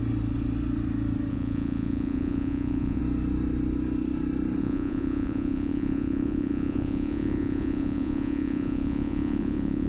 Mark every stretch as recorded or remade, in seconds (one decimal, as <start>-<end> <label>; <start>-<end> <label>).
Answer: 0.0-1.3 recorded; 1.3-3.0 remade; 3.0-4.6 recorded; 4.6-9.9 remade